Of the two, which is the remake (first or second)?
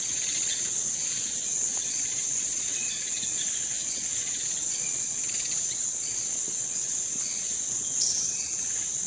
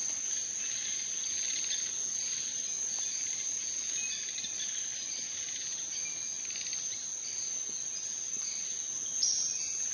first